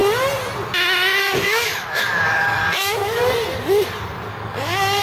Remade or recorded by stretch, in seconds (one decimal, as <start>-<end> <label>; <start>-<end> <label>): 0.0-1.2 recorded; 1.2-3.2 remade; 3.2-4.3 recorded; 4.3-5.0 remade